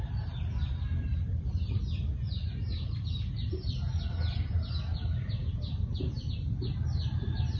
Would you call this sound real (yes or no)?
yes